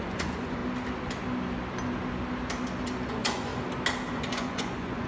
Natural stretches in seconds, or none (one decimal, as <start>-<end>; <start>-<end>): 0.6-3.1; 3.5-4.1